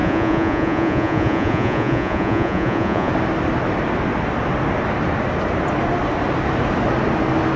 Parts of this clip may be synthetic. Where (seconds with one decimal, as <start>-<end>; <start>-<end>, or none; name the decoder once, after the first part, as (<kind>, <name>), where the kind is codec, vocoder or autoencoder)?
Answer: 0.0-3.1 (vocoder, Vocos)